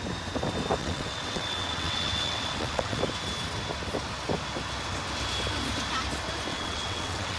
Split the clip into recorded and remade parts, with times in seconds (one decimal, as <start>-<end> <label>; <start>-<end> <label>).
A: 0.0-0.8 recorded; 0.8-3.0 remade; 3.0-6.5 recorded; 6.5-7.4 remade